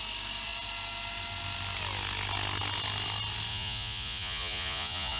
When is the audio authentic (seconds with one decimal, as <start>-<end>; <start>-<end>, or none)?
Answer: 0.0-3.5